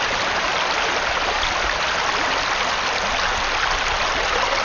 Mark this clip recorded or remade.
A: recorded